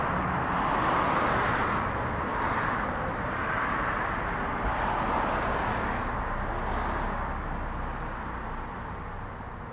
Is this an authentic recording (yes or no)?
yes